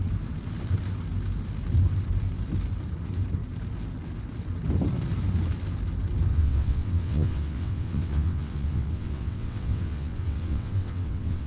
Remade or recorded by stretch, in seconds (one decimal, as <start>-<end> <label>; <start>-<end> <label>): 0.0-6.3 recorded; 6.3-11.5 remade